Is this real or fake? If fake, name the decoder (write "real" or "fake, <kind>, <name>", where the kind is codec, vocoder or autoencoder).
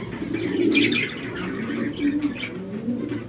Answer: real